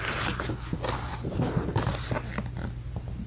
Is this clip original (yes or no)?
yes